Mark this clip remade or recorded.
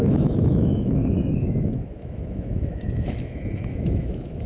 remade